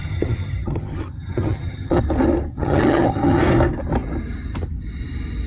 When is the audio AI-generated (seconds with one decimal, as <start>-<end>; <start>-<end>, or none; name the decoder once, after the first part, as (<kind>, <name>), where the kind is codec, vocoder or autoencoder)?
0.0-2.0 (vocoder, HiFi-GAN); 2.5-3.4